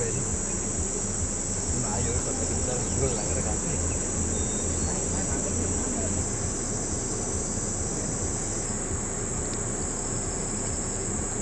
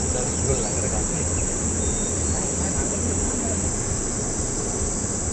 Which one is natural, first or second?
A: first